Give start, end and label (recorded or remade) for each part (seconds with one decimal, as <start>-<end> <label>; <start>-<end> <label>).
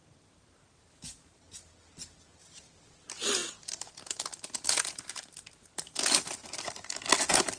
0.0-7.6 recorded